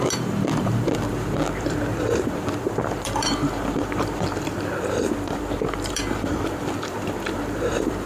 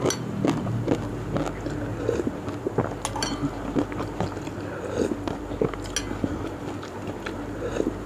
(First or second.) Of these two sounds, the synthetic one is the first